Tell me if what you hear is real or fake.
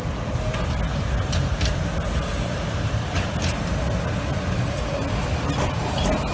real